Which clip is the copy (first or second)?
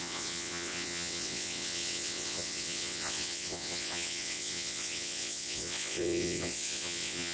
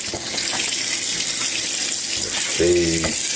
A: first